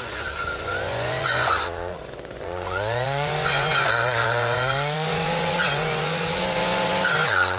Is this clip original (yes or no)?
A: no